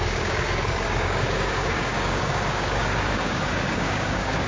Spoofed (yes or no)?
yes